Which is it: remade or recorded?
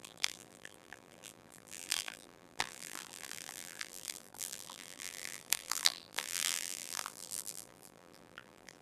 remade